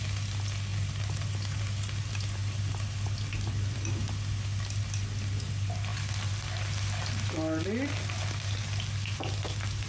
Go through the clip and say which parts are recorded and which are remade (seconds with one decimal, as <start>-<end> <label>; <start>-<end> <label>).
0.0-9.9 recorded